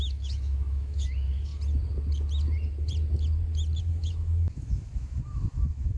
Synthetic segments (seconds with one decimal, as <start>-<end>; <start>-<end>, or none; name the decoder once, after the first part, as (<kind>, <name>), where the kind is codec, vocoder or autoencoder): 0.0-1.5 (autoencoder, DAC-VAE); 3.8-6.0